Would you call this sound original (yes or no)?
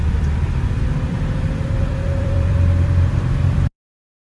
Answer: no